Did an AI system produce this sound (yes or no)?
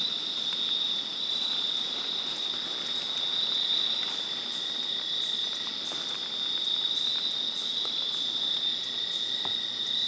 no